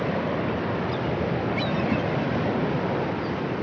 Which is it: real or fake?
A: real